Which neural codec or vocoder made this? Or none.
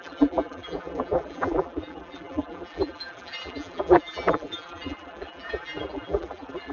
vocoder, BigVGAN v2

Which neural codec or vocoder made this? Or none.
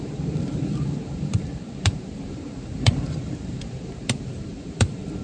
vocoder, BigVGAN v2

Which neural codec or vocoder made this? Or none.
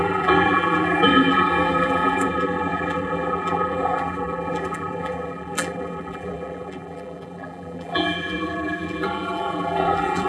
vocoder, BigVGAN v2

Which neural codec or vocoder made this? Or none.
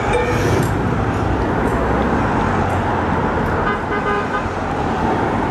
none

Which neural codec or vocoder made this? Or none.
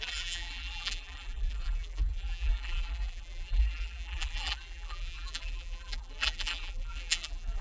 vocoder, BigVGAN v2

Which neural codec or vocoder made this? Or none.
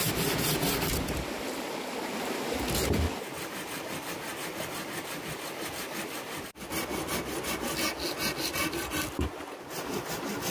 none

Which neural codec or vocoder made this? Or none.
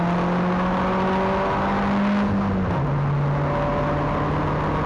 none